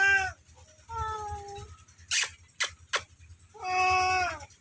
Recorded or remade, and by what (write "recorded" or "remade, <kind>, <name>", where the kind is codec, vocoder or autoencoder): recorded